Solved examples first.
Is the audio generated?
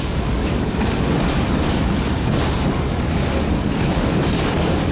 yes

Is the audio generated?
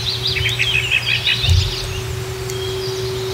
no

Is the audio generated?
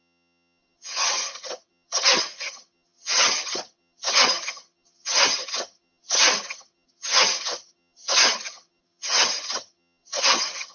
yes